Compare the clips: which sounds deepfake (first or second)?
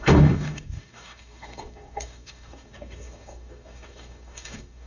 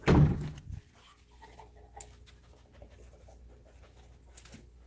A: first